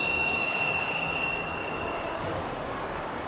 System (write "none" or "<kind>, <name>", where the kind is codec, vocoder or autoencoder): codec, DAC